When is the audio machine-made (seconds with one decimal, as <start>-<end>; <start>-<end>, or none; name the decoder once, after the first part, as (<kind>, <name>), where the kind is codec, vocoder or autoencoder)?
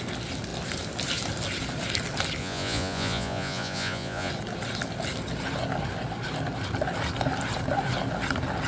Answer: 2.4-4.3 (vocoder, Vocos)